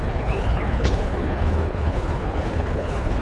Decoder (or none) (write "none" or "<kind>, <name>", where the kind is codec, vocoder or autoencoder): codec, HILCodec